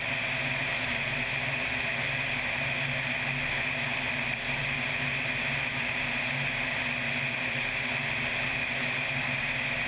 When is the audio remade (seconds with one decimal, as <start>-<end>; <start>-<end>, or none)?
none